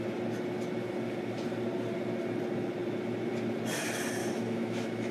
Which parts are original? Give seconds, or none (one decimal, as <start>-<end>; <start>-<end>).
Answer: 0.0-4.2